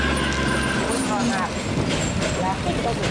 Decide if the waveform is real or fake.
real